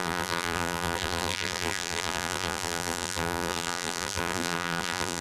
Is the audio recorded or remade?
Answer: remade